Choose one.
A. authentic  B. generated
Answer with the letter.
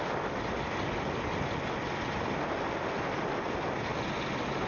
A